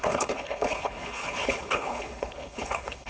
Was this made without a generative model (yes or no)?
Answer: no